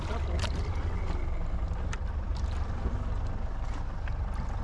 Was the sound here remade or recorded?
recorded